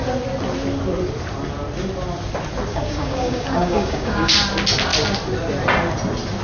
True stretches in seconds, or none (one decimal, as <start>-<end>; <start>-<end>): 0.0-2.7; 4.3-6.4